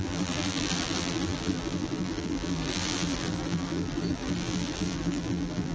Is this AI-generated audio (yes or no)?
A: yes